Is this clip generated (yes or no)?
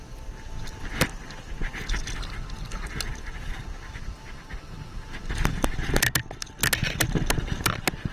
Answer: no